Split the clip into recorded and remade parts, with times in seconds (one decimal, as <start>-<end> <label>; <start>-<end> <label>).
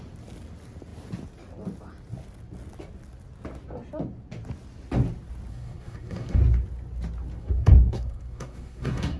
0.0-5.5 recorded; 5.5-6.4 remade; 6.4-7.4 recorded; 7.4-9.2 remade